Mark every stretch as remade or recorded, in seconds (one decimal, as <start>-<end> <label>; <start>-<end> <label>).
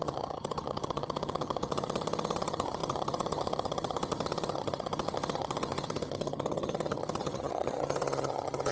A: 0.0-8.7 remade